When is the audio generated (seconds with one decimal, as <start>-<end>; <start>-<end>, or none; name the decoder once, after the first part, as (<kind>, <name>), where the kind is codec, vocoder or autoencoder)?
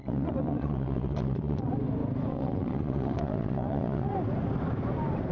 0.0-1.7 (vocoder, Vocos); 2.3-4.1